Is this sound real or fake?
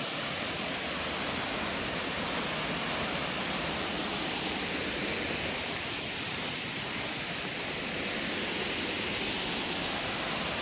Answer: real